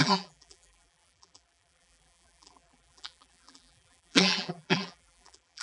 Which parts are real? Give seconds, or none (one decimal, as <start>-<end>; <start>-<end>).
none